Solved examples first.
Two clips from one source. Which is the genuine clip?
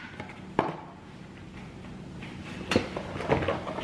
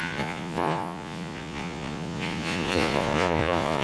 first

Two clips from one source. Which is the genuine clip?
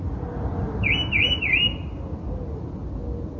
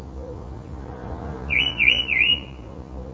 first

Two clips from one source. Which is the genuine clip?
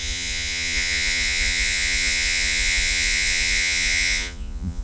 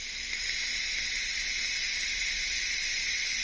second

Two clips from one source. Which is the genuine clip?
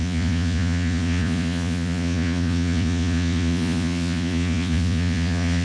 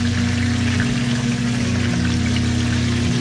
second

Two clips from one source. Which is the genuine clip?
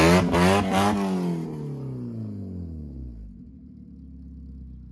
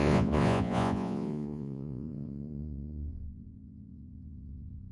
first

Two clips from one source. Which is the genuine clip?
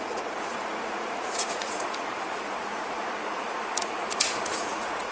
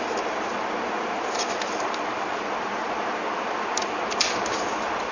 second